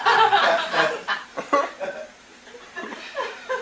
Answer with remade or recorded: remade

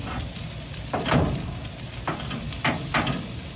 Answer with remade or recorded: recorded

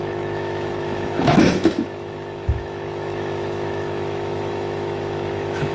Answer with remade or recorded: remade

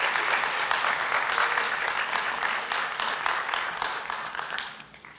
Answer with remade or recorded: recorded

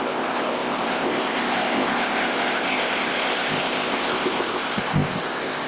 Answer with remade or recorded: remade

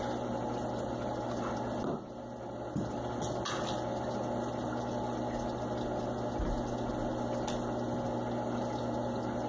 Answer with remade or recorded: recorded